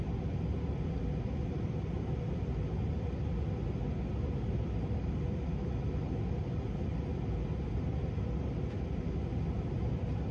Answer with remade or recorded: recorded